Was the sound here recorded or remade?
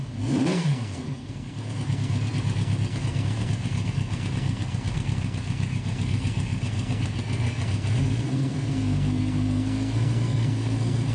remade